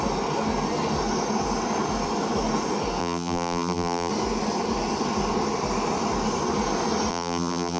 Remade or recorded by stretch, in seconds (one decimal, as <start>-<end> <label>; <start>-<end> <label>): 0.0-3.0 recorded; 3.0-4.1 remade; 4.1-7.1 recorded; 7.1-7.8 remade